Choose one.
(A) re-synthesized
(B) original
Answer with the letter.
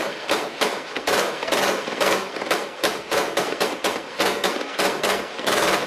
A